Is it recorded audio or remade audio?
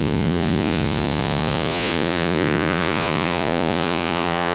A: remade